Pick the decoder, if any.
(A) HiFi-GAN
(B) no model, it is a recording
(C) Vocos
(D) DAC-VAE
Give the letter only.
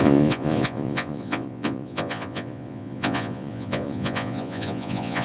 C